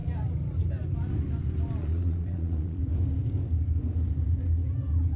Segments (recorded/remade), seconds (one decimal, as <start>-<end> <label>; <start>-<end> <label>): 0.0-1.8 recorded; 1.8-2.8 remade; 2.8-5.2 recorded